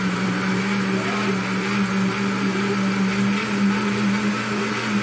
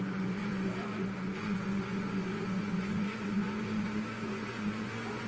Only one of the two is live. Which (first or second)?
first